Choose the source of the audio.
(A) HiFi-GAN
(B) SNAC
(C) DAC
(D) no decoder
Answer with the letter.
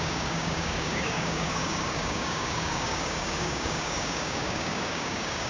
C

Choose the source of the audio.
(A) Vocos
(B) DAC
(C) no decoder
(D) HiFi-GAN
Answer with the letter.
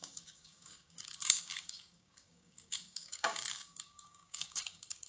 B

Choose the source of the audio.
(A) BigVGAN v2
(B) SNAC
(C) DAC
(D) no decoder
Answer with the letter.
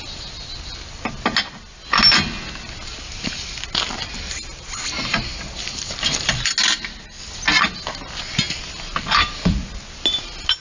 D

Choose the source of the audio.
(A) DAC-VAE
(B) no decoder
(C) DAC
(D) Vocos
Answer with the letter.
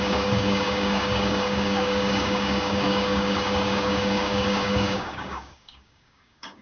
C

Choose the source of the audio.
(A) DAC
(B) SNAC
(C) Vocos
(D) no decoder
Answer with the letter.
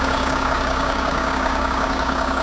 A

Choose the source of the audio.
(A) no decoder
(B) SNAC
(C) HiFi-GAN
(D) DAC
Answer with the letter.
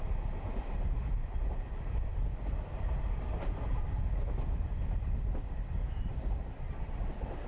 A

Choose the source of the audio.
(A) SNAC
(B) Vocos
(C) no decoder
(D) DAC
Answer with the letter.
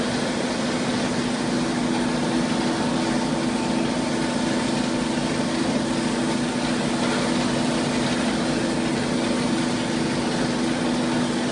C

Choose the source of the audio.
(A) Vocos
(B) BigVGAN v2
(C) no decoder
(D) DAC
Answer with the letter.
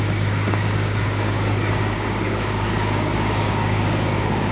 D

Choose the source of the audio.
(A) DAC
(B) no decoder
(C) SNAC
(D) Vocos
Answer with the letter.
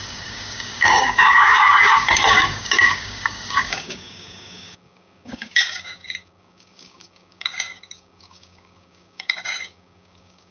A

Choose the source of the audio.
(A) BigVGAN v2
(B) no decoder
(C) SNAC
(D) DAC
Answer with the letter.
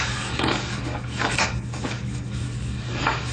D